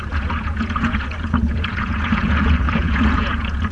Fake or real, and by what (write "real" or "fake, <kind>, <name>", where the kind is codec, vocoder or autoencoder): fake, vocoder, Vocos